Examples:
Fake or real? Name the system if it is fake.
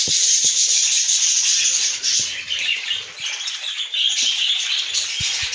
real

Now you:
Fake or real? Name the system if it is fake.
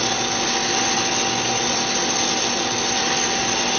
real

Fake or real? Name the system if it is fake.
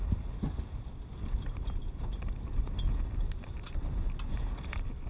real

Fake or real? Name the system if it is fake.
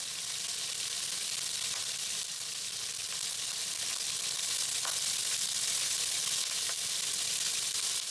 real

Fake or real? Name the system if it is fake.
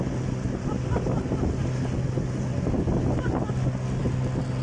real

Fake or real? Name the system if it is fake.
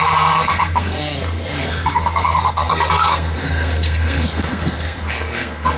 fake, codec, SNAC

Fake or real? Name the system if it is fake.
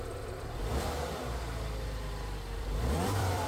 fake, vocoder, BigVGAN v2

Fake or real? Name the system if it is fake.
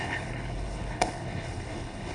fake, codec, HILCodec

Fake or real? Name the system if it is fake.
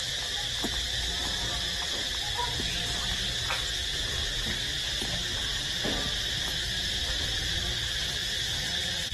real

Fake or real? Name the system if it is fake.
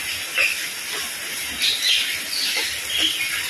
real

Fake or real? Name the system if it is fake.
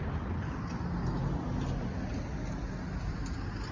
real